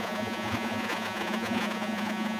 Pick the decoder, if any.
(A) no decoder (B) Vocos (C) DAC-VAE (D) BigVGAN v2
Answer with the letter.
B